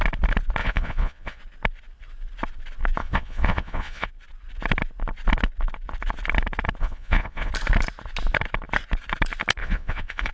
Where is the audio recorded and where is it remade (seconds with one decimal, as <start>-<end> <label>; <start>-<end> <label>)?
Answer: 0.0-0.6 recorded; 0.6-1.4 remade; 1.4-3.0 recorded; 3.0-4.1 remade; 4.1-6.8 recorded; 6.8-7.5 remade; 7.5-9.6 recorded; 9.6-10.3 remade